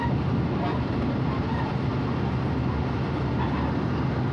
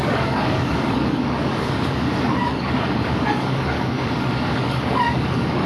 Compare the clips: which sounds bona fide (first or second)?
first